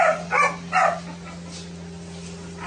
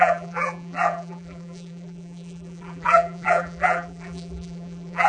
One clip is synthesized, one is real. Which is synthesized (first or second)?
second